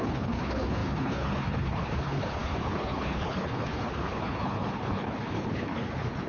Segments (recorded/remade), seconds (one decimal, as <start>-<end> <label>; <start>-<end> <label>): 0.0-6.3 remade